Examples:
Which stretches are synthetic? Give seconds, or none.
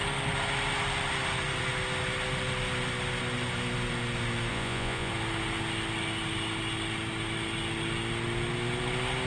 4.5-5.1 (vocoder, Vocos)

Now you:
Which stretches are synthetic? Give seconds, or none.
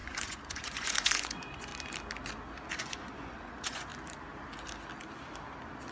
0.0-1.7 (vocoder, Vocos); 2.8-3.9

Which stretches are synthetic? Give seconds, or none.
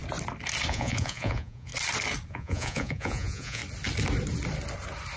0.7-1.7 (vocoder, Vocos); 2.3-3.6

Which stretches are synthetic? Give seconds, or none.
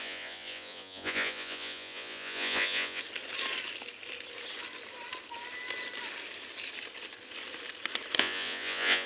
0.0-3.0 (vocoder, Vocos); 8.2-9.1